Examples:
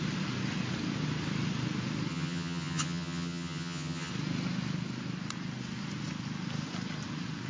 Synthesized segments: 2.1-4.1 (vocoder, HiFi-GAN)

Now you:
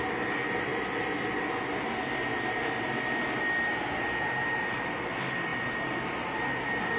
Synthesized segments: none

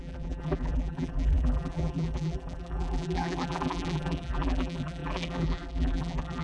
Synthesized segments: 0.0-6.4 (vocoder, BigVGAN v2)

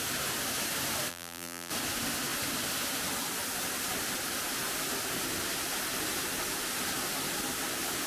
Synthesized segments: 1.1-1.7 (vocoder, BigVGAN v2)